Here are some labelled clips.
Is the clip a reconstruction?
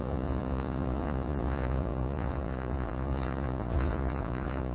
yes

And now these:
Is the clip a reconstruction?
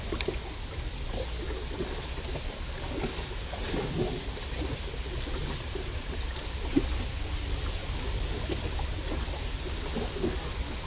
no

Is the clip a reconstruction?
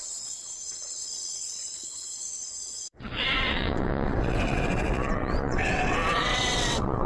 yes